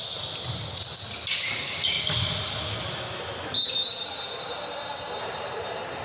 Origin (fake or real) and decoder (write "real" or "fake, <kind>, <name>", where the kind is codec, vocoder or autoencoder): real